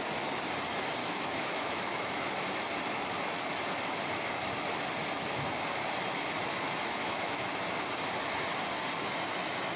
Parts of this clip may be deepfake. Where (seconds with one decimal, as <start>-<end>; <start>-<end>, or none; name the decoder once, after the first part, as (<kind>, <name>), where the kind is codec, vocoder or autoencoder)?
1.0-2.3 (autoencoder, DAC-VAE); 7.0-7.5